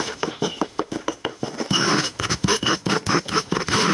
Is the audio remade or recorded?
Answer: remade